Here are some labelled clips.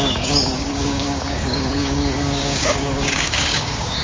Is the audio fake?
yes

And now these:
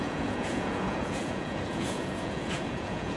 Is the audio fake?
yes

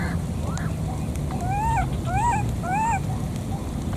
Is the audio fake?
yes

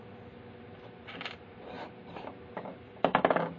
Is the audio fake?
no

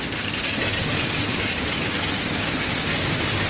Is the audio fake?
no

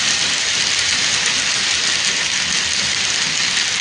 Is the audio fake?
no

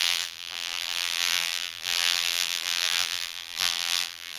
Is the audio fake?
yes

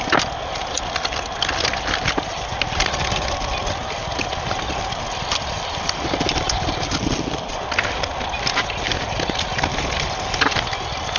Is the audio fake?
no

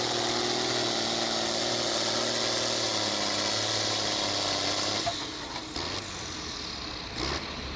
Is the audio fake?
no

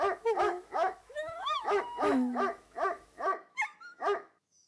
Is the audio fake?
yes